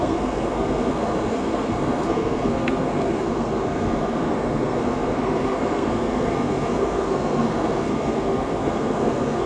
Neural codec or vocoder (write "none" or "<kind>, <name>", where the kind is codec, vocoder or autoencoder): codec, SNAC